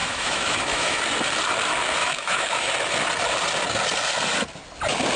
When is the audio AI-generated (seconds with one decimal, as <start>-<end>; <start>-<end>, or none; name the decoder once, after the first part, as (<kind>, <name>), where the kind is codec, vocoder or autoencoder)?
0.0-1.0 (autoencoder, DAC-VAE); 2.0-2.7